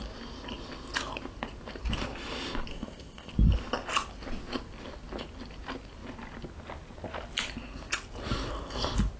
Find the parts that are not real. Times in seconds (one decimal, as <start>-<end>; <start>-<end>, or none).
2.7-3.3